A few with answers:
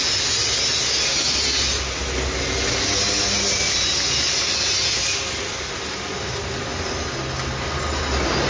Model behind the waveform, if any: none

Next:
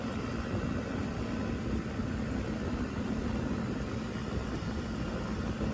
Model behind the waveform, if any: none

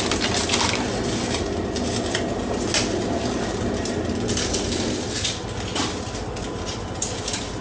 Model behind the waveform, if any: none